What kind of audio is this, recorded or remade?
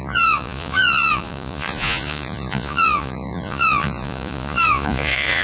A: remade